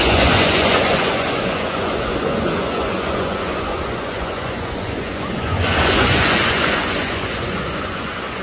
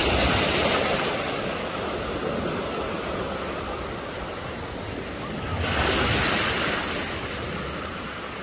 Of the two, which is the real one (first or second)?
second